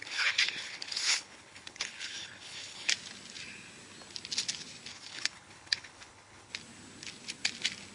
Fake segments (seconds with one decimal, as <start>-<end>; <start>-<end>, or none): 0.0-2.9; 4.9-6.5